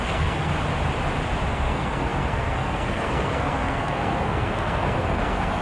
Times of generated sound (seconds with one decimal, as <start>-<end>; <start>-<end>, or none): 0.0-0.5; 1.5-5.6